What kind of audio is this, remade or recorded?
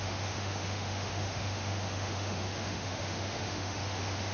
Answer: remade